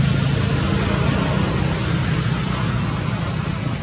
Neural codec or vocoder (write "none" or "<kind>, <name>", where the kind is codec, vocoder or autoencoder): none